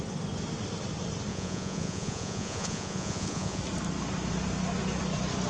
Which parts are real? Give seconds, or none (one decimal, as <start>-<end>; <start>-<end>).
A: 0.0-1.3; 3.6-5.5